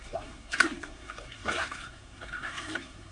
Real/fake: fake